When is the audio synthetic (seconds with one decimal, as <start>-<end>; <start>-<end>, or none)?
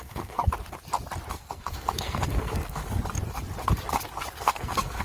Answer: 0.0-0.5; 1.3-2.8; 4.4-5.0